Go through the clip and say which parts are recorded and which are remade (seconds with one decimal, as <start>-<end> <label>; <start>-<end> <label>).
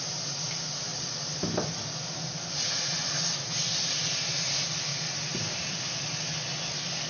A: 0.0-4.9 recorded; 4.9-5.9 remade; 5.9-7.1 recorded